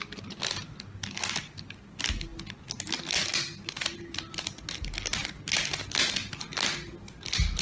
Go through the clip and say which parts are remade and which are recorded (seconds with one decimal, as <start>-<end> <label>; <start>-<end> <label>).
0.0-3.3 recorded; 3.3-4.3 remade; 4.3-7.6 recorded